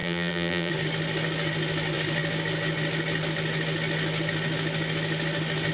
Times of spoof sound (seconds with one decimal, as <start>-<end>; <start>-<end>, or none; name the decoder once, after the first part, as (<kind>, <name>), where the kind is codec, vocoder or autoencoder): 0.0-0.7 (vocoder, BigVGAN v2)